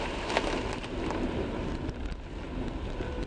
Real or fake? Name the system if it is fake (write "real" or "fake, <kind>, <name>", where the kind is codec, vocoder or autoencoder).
real